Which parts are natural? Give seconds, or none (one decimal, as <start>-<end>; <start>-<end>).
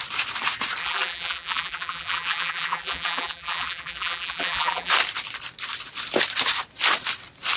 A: 0.0-0.8; 4.9-7.6